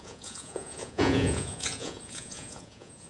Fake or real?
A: fake